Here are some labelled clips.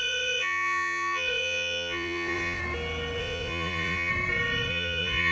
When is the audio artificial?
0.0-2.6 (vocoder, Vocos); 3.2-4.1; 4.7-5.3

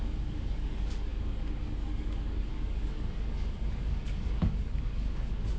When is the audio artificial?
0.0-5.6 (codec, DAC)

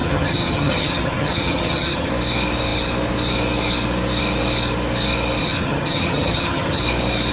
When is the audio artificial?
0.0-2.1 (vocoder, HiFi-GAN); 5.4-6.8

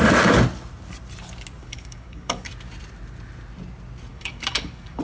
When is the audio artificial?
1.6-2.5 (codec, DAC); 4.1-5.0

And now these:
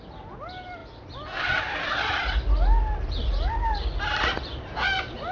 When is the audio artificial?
none

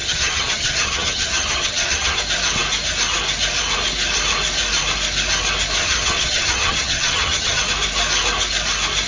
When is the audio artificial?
0.0-2.2 (vocoder, HiFi-GAN); 5.8-7.6